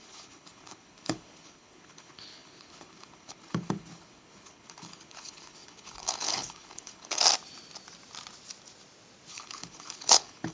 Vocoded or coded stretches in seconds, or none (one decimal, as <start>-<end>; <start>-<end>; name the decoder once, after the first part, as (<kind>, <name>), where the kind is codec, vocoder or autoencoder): 0.0-7.2 (codec, HILCodec); 9.3-10.5